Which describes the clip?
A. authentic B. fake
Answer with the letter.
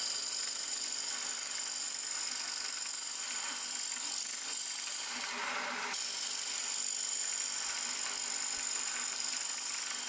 A